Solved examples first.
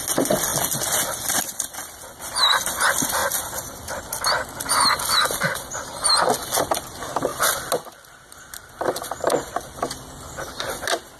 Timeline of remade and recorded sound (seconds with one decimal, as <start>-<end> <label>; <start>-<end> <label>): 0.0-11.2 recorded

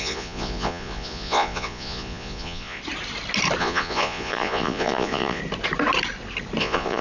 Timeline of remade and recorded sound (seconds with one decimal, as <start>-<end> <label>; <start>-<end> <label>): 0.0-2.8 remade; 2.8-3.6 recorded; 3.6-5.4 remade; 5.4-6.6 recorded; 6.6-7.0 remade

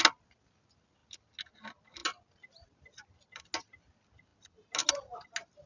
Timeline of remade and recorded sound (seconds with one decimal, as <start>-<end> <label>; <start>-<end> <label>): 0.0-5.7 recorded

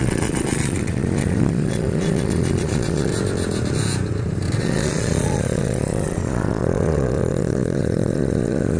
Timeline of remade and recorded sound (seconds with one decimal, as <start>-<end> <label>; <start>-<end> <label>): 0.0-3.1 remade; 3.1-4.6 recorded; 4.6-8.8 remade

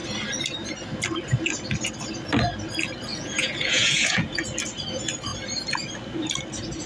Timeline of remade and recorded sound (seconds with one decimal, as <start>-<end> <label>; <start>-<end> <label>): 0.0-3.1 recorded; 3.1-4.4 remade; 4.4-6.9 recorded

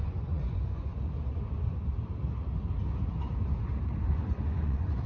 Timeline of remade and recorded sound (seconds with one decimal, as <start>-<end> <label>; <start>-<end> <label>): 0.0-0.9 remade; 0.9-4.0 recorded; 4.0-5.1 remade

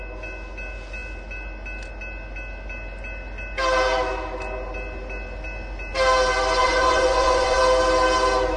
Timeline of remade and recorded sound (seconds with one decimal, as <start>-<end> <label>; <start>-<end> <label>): 0.0-6.6 recorded; 6.6-7.6 remade; 7.6-8.6 recorded

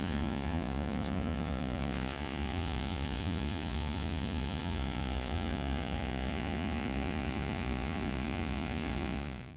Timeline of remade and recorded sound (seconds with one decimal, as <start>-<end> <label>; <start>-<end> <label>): 0.0-9.6 remade